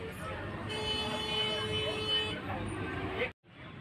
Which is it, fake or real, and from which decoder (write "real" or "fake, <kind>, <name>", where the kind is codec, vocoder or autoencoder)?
real